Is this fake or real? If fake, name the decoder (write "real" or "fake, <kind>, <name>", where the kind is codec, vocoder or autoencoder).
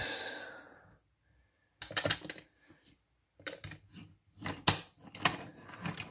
real